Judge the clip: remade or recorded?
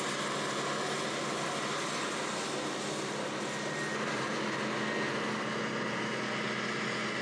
recorded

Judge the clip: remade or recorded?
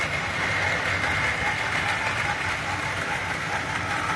recorded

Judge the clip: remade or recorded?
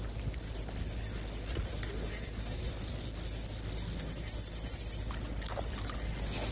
recorded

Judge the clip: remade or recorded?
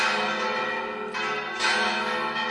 recorded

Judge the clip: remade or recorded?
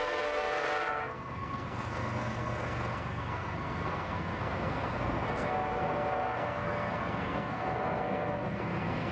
remade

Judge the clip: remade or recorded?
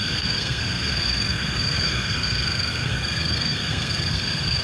remade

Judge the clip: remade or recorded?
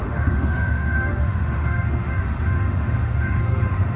remade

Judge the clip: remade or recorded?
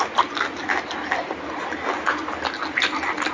recorded